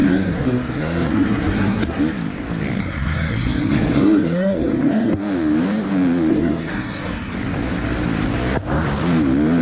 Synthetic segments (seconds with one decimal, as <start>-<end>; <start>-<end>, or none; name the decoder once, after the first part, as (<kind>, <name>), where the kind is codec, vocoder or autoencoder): 0.0-2.0 (codec, SNAC); 2.8-5.1; 6.3-7.3